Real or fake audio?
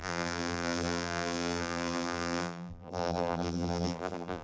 fake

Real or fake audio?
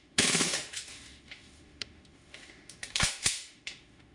fake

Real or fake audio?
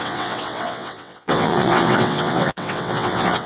fake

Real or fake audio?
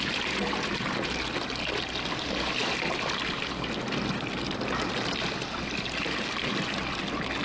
real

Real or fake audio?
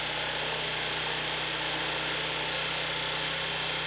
real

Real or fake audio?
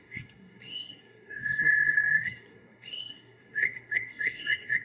fake